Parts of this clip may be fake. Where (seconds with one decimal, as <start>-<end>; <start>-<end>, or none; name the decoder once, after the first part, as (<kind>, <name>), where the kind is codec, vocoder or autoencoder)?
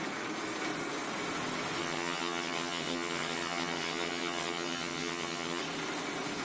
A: 1.8-5.6 (vocoder, HiFi-GAN)